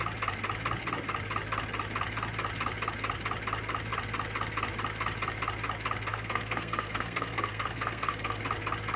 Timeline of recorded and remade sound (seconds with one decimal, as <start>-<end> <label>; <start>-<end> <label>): 0.0-6.1 recorded; 6.1-8.4 remade; 8.4-9.0 recorded